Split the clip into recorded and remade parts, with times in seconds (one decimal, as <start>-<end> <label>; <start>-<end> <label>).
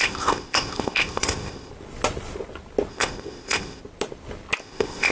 0.0-1.7 remade; 1.7-2.9 recorded; 2.9-3.8 remade; 3.8-4.6 recorded; 4.6-5.1 remade